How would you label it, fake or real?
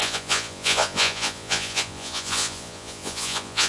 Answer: fake